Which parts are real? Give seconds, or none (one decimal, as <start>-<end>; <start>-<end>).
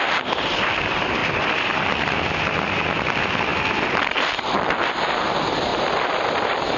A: 0.0-1.2; 2.2-3.5; 4.8-5.7; 6.3-6.8